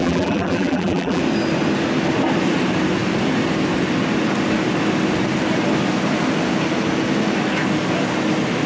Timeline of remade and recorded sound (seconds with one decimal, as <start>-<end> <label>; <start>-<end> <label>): 0.0-1.2 remade; 1.2-8.7 recorded